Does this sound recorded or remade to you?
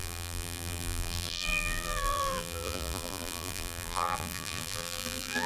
remade